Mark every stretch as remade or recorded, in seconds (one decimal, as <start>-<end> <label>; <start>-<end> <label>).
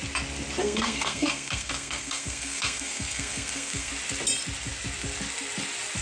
0.0-0.6 recorded; 0.6-3.9 remade; 3.9-6.0 recorded